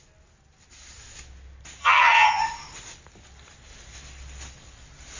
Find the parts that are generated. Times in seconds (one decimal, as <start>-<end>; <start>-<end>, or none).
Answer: 1.8-2.4